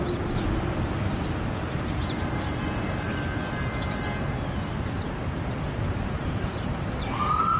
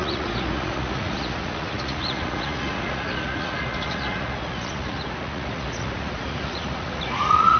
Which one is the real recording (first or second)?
first